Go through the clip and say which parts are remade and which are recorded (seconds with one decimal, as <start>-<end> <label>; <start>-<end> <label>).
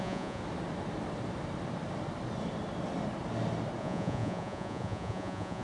0.0-0.4 remade; 0.4-3.8 recorded; 3.8-5.6 remade